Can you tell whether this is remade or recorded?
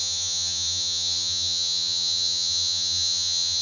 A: remade